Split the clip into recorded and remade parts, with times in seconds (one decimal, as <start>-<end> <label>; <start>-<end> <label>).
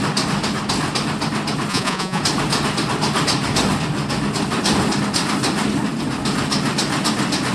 0.0-1.7 recorded; 1.7-2.2 remade; 2.2-7.5 recorded